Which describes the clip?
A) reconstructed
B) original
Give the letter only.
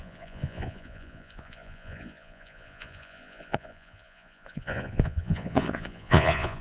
A